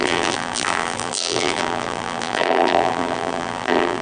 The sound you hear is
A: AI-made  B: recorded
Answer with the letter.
A